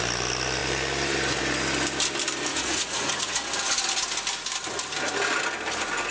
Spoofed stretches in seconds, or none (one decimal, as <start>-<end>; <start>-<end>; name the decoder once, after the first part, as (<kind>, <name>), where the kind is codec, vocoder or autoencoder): 2.5-3.4 (vocoder, Vocos)